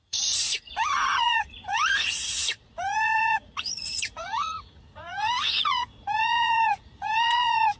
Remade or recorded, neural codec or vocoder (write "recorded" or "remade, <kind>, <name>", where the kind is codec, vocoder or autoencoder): remade, vocoder, Vocos